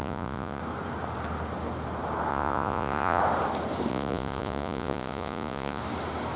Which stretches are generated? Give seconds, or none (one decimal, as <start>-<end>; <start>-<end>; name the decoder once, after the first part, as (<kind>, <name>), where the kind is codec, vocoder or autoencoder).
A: 0.0-0.6 (vocoder, Vocos); 2.3-3.2; 3.9-5.8